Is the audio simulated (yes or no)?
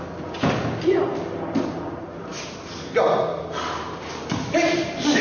no